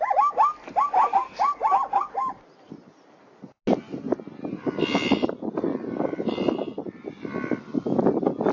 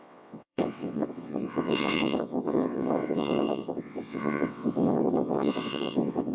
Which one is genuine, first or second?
first